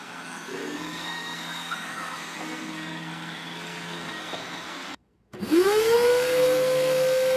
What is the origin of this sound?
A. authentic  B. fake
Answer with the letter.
B